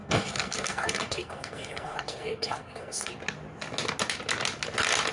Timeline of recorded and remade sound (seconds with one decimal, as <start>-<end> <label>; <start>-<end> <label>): 0.0-3.1 remade; 3.1-5.1 recorded